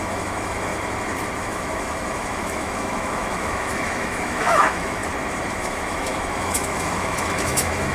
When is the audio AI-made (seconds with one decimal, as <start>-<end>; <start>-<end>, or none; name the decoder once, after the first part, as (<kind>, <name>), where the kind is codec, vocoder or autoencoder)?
0.0-0.7 (autoencoder, DAC-VAE); 1.4-5.0; 5.5-7.9

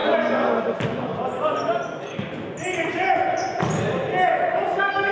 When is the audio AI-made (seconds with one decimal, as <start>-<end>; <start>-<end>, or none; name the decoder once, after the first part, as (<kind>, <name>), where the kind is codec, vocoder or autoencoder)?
4.1-5.1 (autoencoder, DAC-VAE)

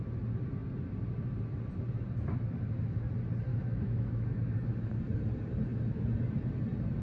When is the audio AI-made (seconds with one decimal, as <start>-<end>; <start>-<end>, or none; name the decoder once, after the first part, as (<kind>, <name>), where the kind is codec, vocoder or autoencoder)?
3.5-5.0 (autoencoder, DAC-VAE)

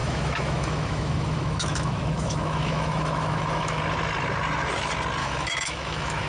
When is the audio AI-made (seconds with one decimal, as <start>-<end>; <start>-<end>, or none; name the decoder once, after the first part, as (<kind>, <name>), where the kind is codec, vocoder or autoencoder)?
0.0-3.8 (autoencoder, DAC-VAE); 5.2-6.3

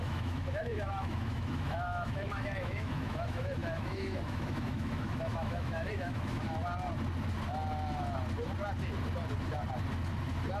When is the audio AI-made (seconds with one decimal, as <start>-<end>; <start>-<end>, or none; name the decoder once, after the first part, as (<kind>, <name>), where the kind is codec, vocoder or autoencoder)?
0.0-6.6 (autoencoder, DAC-VAE)